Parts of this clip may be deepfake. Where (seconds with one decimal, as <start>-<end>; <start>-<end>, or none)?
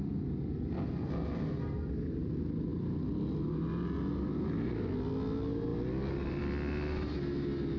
none